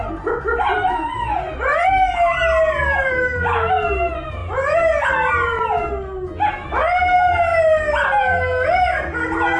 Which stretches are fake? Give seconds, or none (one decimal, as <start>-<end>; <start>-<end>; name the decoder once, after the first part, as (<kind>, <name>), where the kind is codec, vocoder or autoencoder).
none